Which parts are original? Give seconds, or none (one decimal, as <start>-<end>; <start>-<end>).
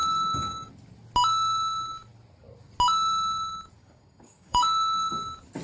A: 0.7-3.8; 5.1-5.6